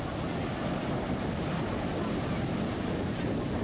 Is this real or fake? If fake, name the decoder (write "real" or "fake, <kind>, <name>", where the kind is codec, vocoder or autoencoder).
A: real